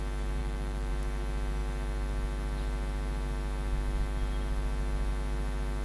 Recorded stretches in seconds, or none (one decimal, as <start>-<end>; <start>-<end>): 0.0-0.4; 0.9-5.8